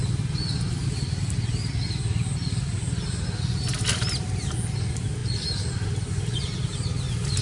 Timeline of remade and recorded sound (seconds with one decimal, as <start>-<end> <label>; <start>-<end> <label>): 0.0-5.2 recorded; 5.2-7.4 remade